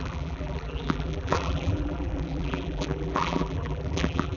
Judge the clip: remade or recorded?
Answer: remade